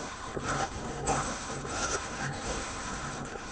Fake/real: fake